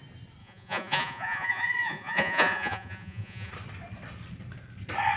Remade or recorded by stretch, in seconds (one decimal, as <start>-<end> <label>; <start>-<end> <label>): 0.0-0.4 recorded; 0.4-3.5 remade; 3.5-5.2 recorded